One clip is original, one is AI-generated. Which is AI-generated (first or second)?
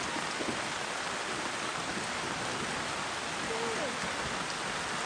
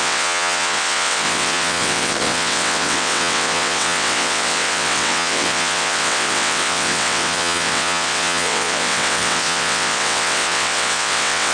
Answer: second